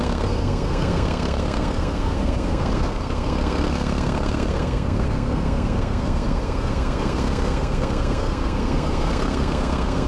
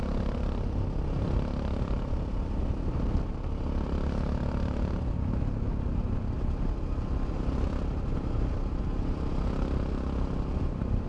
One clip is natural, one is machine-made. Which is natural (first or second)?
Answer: second